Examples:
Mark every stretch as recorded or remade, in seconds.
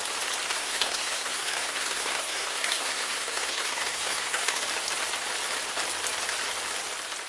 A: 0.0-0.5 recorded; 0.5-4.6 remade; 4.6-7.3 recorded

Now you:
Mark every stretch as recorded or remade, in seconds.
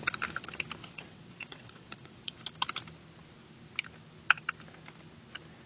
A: 0.0-0.8 recorded; 0.8-2.4 remade; 2.4-5.7 recorded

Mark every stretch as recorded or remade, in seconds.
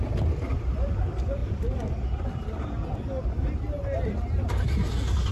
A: 0.0-1.4 recorded; 1.4-2.2 remade; 2.2-5.3 recorded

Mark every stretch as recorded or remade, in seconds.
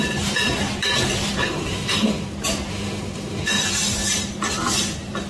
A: 0.0-1.4 recorded; 1.4-2.3 remade; 2.3-2.7 recorded; 2.7-3.6 remade; 3.6-5.3 recorded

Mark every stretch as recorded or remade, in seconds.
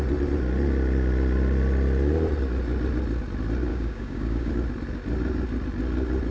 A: 0.0-3.7 recorded; 3.7-4.5 remade; 4.5-6.3 recorded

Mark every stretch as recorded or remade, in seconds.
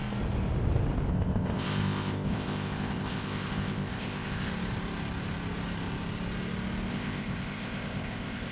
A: 0.0-1.1 recorded; 1.1-4.5 remade; 4.5-6.9 recorded; 6.9-8.5 remade